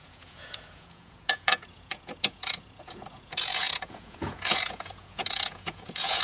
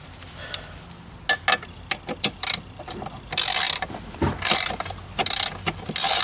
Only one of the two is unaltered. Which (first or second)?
second